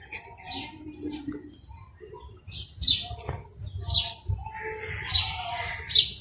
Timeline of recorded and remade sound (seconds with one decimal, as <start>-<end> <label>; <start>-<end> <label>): 0.0-6.2 recorded